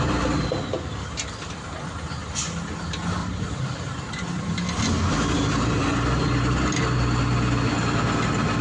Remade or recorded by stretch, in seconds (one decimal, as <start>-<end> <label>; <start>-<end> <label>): 0.0-3.2 recorded; 3.2-4.1 remade; 4.1-8.6 recorded